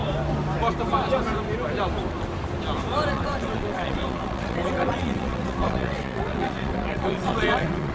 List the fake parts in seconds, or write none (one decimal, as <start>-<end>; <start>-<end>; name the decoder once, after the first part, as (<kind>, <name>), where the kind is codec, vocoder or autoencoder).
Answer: 3.1-7.9 (vocoder, WaveNeXt)